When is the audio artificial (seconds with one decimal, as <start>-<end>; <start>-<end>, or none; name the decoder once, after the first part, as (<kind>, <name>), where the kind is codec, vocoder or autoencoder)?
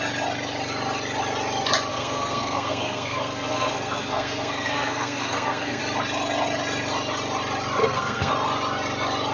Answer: 1.9-5.8 (codec, SNAC); 7.8-8.3